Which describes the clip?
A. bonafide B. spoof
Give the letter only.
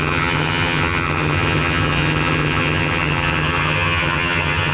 B